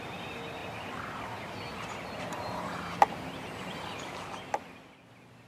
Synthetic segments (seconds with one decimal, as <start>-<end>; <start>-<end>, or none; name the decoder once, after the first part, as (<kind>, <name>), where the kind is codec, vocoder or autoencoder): 0.6-3.9 (vocoder, BigVGAN v2)